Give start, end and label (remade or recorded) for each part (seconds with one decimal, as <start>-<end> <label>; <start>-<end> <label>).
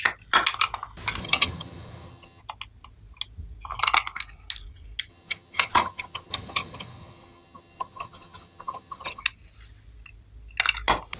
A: 0.0-1.2 recorded; 1.2-2.4 remade; 2.4-5.1 recorded; 5.1-9.2 remade; 9.2-11.2 recorded